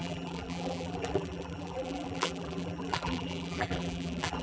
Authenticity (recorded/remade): remade